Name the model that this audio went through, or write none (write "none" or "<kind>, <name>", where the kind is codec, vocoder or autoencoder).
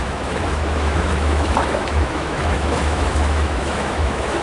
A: autoencoder, DAC-VAE